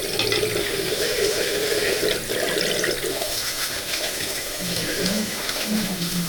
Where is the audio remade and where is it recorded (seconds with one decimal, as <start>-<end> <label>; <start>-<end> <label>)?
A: 0.0-0.6 recorded; 0.6-2.0 remade; 2.0-3.1 recorded; 3.1-6.3 remade